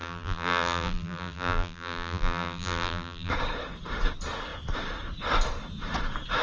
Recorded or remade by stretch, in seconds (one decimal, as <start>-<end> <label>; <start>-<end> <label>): 0.0-3.3 remade; 3.3-6.4 recorded